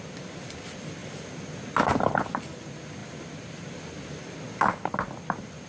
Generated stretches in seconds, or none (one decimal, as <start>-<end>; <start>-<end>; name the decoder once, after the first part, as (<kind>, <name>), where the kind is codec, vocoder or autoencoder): none